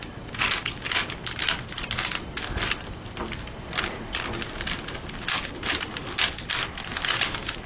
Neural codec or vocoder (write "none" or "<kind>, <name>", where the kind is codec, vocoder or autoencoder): none